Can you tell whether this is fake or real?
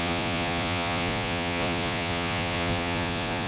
fake